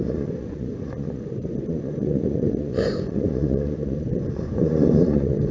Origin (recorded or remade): remade